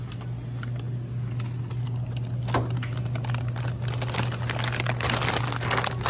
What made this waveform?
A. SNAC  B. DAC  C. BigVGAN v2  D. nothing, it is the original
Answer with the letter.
D